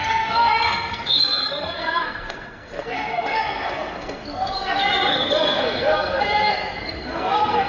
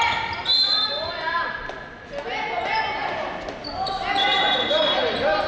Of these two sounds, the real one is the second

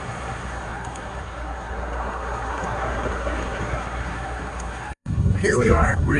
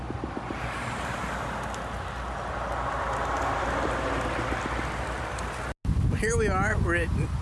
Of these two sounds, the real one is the second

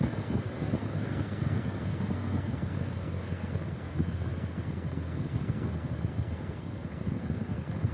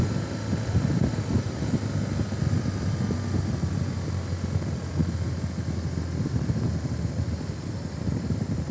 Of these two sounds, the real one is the second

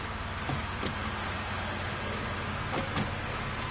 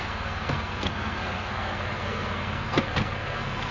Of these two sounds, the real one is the first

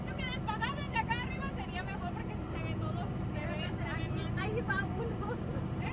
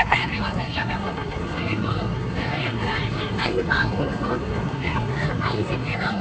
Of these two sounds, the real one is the first